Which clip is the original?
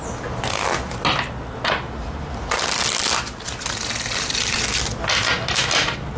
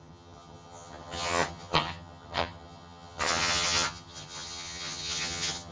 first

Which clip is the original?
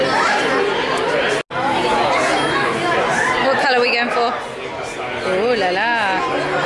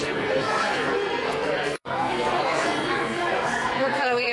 first